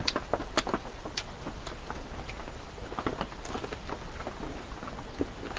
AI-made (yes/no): no